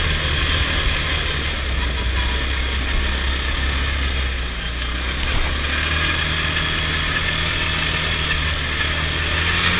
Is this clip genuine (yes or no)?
yes